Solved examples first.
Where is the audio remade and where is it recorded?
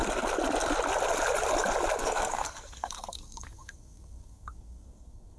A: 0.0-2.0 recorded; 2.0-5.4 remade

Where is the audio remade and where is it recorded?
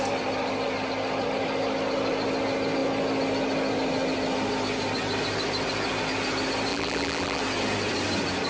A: 0.0-6.7 recorded; 6.7-7.4 remade; 7.4-8.5 recorded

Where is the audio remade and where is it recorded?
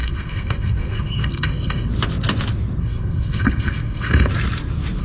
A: 0.0-1.9 remade; 1.9-2.8 recorded; 2.8-4.3 remade; 4.3-5.0 recorded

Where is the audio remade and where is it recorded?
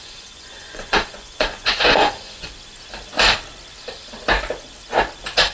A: 0.0-2.5 remade; 2.5-5.5 recorded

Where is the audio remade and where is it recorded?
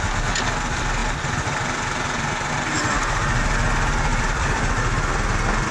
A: 0.0-4.1 recorded; 4.1-4.7 remade; 4.7-5.7 recorded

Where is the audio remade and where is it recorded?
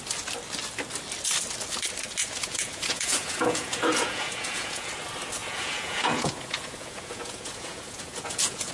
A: 0.0-2.2 recorded; 2.2-4.9 remade; 4.9-5.4 recorded; 5.4-8.7 remade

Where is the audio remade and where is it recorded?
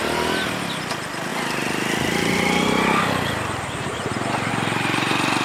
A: 0.0-5.4 recorded